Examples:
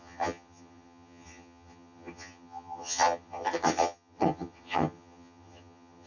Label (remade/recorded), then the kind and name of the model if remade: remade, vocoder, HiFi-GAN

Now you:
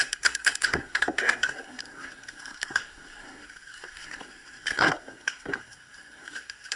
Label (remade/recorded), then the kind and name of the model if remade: remade, codec, SNAC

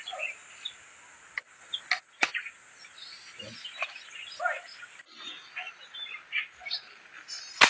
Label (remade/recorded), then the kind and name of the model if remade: recorded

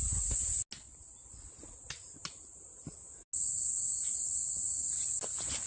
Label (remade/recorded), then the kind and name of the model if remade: recorded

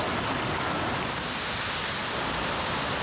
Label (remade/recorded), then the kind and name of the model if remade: recorded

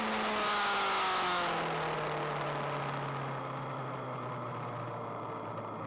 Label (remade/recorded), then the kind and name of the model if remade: recorded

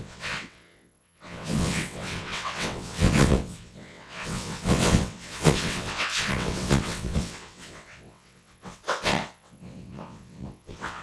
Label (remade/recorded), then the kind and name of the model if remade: remade, vocoder, WaveNeXt